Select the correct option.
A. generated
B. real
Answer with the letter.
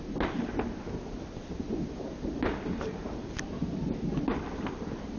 B